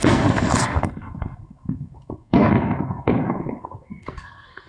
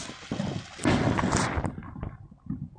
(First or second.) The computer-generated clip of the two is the first